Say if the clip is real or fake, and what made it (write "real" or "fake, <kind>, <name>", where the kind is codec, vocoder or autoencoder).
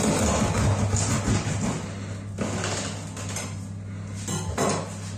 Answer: real